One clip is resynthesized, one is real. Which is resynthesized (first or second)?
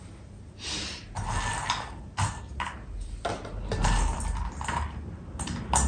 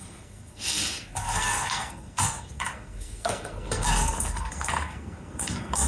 second